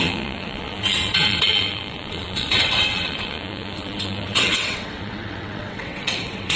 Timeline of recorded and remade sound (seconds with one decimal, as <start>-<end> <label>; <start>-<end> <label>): 0.0-6.6 remade